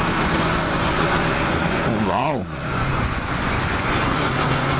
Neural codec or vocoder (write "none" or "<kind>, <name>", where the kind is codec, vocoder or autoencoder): vocoder, Vocos